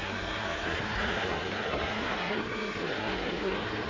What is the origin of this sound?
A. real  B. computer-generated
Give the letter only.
B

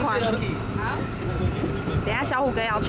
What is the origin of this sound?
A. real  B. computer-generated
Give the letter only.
A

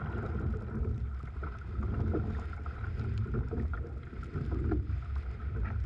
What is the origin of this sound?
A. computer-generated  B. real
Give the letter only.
B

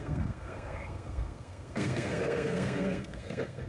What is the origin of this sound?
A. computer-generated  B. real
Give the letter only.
A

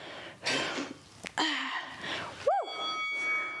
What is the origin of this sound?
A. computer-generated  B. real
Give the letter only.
B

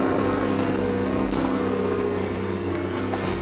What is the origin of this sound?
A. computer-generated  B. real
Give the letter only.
A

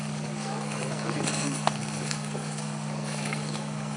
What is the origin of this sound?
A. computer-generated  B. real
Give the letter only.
A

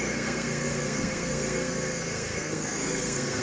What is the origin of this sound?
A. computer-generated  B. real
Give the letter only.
A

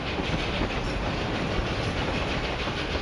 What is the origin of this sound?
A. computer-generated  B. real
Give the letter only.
B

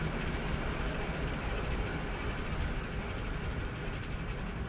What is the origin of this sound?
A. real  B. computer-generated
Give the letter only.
A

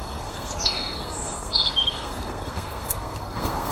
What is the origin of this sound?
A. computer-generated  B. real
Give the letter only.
A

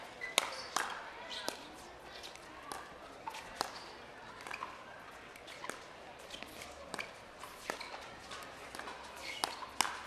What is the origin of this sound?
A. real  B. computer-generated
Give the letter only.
A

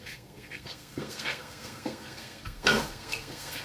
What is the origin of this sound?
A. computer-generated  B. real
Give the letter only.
A